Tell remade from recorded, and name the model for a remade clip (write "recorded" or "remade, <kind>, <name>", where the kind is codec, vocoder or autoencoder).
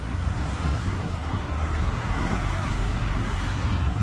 remade, codec, SNAC